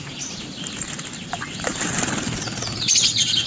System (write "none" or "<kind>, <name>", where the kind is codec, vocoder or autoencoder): none